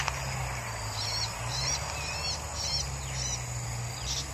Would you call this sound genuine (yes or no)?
yes